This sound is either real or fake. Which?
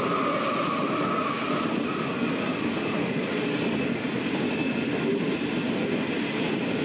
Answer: real